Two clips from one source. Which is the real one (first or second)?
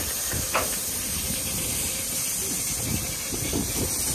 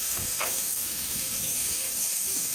first